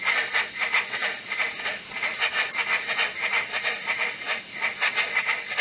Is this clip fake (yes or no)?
no